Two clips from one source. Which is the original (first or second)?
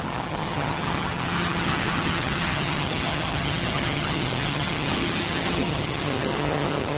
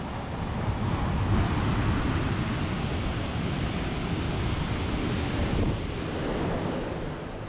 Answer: second